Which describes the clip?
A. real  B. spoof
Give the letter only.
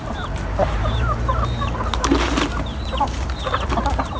B